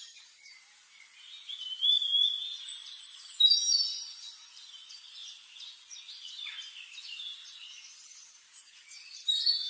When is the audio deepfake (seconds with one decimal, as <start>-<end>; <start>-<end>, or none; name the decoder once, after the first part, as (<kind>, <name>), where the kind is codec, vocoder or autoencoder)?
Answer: none